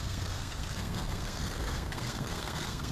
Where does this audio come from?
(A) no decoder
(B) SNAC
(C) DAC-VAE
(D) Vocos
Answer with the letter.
B